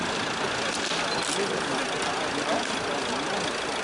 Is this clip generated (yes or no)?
no